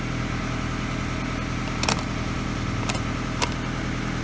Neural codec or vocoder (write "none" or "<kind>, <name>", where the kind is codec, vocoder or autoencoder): none